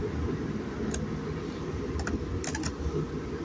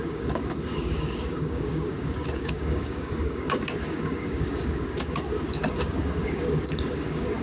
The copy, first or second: second